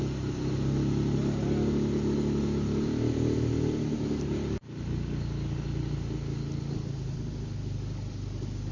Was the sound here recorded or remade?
recorded